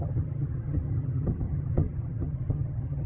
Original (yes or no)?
no